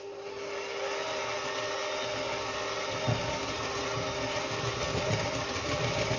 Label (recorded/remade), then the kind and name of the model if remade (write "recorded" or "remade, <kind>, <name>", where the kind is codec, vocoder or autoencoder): recorded